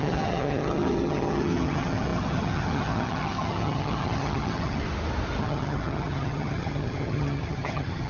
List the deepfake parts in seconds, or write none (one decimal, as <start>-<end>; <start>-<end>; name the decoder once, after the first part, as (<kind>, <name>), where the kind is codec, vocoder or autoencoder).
0.0-4.8 (vocoder, HiFi-GAN); 5.4-8.1

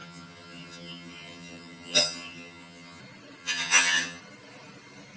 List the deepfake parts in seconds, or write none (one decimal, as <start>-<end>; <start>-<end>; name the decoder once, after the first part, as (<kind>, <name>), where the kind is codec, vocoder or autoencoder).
0.0-3.0 (vocoder, HiFi-GAN); 3.4-4.2

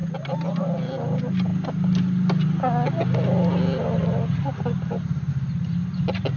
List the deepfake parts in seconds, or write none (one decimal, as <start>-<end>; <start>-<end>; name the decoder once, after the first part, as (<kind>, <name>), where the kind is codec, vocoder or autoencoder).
none